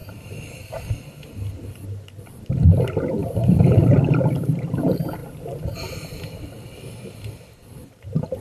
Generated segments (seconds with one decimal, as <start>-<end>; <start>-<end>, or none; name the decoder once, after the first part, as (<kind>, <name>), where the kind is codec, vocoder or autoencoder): 0.0-0.8 (vocoder, BigVGAN v2); 3.2-4.1